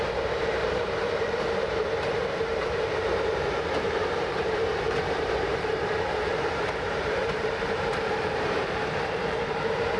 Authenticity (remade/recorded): remade